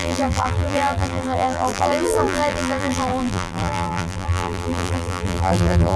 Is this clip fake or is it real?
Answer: fake